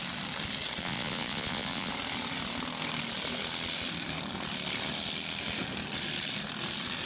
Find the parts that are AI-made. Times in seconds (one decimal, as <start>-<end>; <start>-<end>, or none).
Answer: 0.8-1.9